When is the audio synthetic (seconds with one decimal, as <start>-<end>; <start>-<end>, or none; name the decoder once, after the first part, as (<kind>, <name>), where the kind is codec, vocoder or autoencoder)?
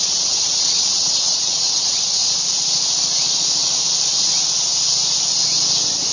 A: 0.0-2.2 (vocoder, WaveNeXt)